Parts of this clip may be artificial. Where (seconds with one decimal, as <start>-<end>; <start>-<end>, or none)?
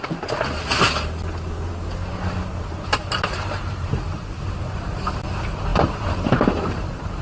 5.7-7.2